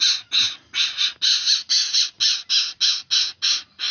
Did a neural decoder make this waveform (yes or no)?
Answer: no